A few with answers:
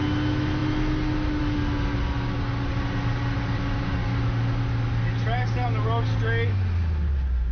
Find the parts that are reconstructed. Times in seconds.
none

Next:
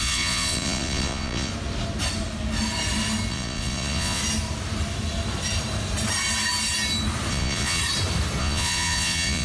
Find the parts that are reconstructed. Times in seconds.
0.0-1.5 (vocoder, Vocos); 3.3-4.2; 7.3-7.8; 8.4-9.4

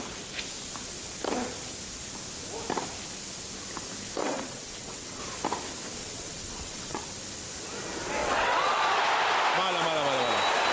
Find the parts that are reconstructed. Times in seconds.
4.2-5.2 (vocoder, WaveNeXt); 6.0-7.0; 8.2-8.8

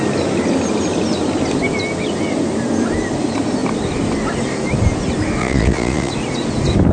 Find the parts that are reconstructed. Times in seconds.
5.4-6.1 (vocoder, Vocos)

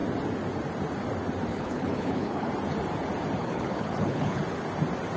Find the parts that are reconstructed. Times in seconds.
1.5-2.5 (codec, HILCodec); 3.4-4.4

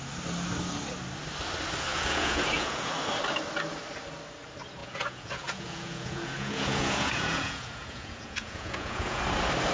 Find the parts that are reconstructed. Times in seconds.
1.9-2.9 (vocoder, Vocos); 4.8-9.2

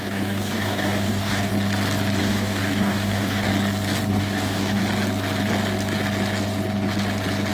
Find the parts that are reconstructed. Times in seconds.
0.0-1.5 (codec, DAC); 2.2-3.5; 4.1-4.8

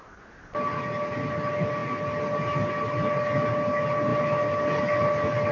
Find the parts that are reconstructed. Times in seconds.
none